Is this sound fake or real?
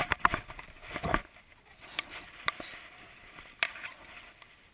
real